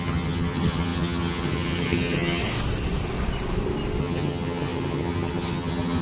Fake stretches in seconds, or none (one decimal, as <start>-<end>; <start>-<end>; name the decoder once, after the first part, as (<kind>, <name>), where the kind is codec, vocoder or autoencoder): 0.0-2.4 (vocoder, HiFi-GAN); 4.0-6.0